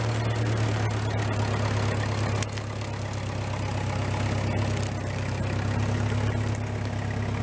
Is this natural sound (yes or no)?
yes